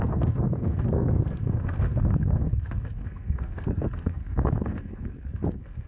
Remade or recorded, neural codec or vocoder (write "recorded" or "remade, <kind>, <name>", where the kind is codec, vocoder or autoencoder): remade, codec, SNAC